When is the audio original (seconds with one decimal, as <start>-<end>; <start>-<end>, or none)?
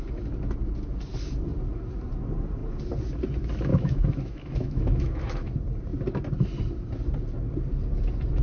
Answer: 0.0-3.7; 5.5-8.4